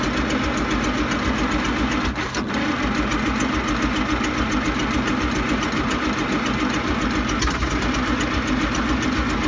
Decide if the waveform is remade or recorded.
recorded